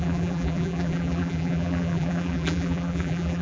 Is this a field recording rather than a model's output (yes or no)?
no